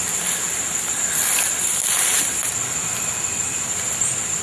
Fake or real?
fake